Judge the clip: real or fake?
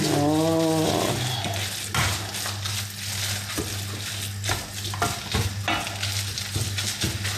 real